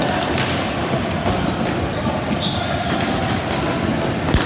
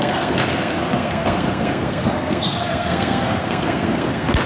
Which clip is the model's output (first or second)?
second